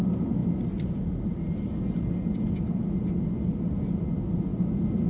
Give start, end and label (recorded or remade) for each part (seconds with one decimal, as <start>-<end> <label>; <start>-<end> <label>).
0.0-5.1 recorded